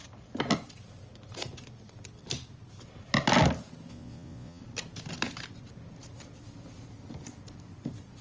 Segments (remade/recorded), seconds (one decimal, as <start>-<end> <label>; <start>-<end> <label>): 0.0-3.9 recorded; 3.9-4.6 remade; 4.6-8.2 recorded